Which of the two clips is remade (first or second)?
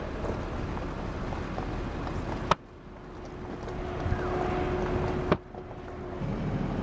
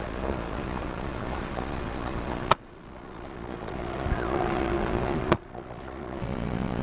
second